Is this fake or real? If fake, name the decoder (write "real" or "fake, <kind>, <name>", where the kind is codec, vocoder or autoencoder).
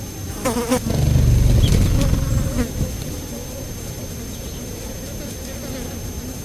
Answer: real